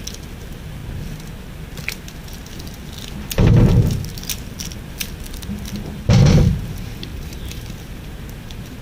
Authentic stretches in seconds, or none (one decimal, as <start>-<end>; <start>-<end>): 0.0-7.1; 8.2-8.8